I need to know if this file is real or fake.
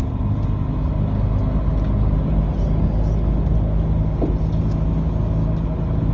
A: real